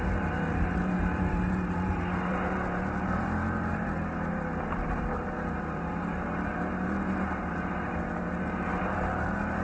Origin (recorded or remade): remade